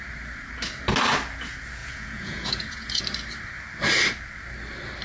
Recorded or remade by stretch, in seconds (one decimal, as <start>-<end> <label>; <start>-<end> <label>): 0.0-1.8 recorded; 1.8-3.0 remade; 3.0-5.0 recorded